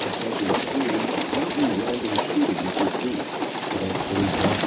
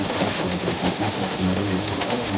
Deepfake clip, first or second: second